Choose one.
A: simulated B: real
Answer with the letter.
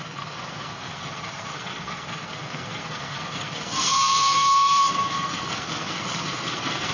A